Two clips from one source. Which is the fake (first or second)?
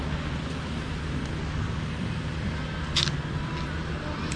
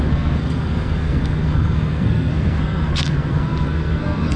second